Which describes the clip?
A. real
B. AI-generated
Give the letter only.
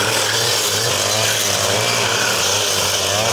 A